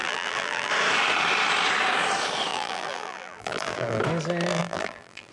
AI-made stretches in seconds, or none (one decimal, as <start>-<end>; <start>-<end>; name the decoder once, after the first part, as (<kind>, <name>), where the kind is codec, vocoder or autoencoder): 0.0-0.7 (vocoder, BigVGAN v2); 2.5-4.0; 4.6-5.3